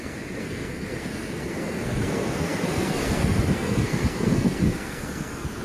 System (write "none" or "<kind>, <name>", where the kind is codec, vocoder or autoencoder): codec, SNAC